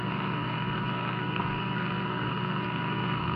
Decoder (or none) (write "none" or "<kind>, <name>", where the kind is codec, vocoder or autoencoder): codec, SNAC